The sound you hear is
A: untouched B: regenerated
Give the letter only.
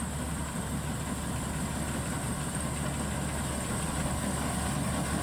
A